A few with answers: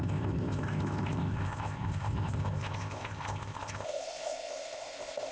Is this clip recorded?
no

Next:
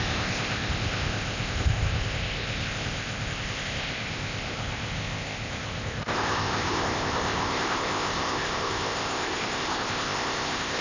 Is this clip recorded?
no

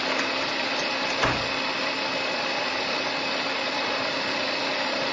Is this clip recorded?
yes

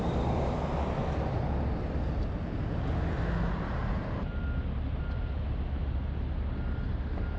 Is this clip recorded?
yes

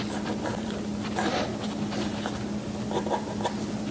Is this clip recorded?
yes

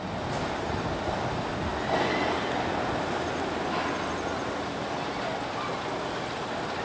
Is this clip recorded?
yes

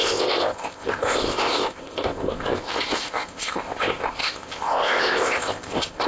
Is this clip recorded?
no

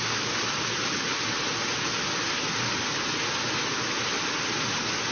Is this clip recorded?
yes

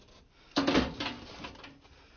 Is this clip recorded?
yes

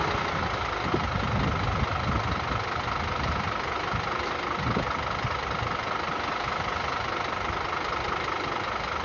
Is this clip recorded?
yes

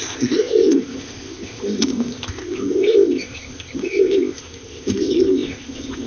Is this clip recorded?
no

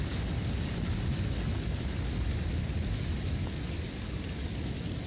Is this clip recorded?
yes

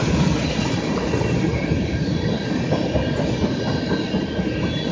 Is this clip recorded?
yes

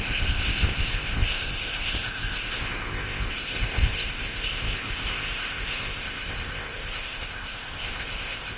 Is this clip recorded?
no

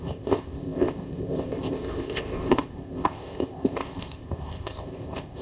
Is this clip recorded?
no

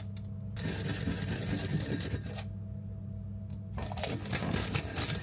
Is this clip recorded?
yes